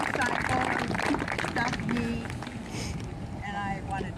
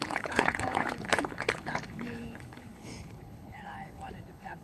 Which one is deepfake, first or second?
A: second